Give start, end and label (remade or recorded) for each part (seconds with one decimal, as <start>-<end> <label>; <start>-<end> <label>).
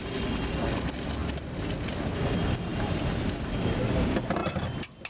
0.0-5.1 recorded